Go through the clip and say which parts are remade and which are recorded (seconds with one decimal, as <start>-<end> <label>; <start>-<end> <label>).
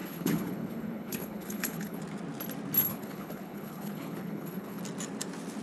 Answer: 0.0-2.0 remade; 2.0-2.9 recorded; 2.9-4.8 remade; 4.8-5.6 recorded